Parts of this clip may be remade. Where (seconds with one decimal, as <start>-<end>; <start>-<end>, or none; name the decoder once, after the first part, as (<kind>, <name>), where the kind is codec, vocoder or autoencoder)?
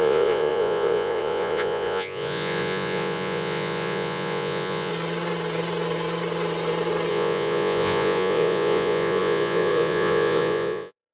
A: 0.0-4.9 (vocoder, Vocos); 7.1-11.1